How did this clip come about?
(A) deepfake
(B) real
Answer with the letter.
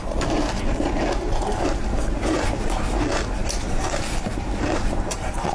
A